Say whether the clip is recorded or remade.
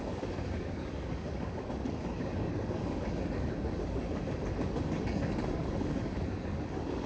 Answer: remade